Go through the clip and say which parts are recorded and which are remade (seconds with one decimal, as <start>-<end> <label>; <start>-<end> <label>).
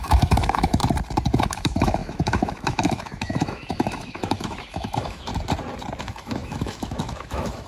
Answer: 0.0-0.8 remade; 0.8-1.4 recorded; 1.4-5.3 remade; 5.3-6.0 recorded; 6.0-7.7 remade